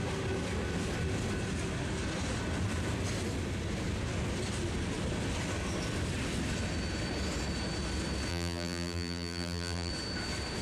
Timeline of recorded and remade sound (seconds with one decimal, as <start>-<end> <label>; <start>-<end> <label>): 0.0-8.3 recorded; 8.3-9.9 remade; 9.9-10.6 recorded